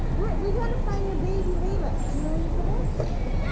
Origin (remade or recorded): recorded